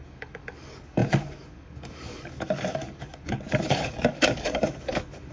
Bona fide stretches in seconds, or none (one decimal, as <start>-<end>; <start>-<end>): none